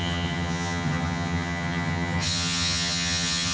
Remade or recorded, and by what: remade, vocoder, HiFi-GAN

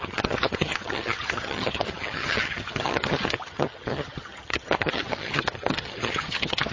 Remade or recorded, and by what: remade, vocoder, HiFi-GAN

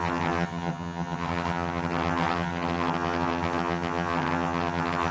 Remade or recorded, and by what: remade, vocoder, HiFi-GAN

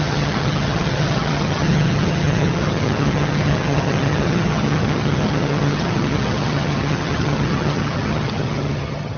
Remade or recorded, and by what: remade, vocoder, HiFi-GAN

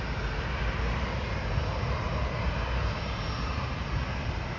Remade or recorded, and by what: recorded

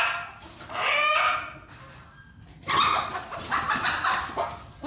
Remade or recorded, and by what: recorded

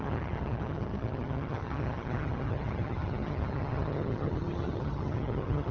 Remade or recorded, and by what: remade, vocoder, HiFi-GAN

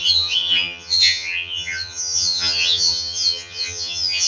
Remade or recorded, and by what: remade, vocoder, HiFi-GAN